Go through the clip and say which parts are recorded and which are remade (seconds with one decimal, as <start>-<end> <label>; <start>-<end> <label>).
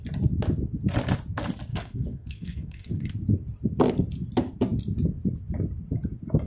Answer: 0.0-1.7 recorded; 1.7-3.1 remade; 3.1-6.5 recorded